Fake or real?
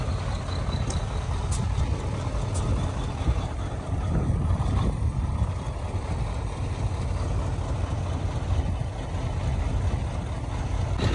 real